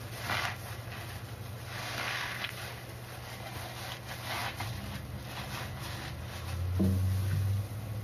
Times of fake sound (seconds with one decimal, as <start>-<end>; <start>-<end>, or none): 1.8-2.5